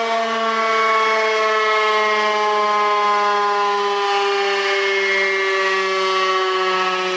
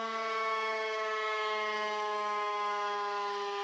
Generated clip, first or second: second